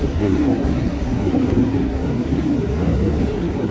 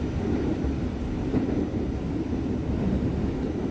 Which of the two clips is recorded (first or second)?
second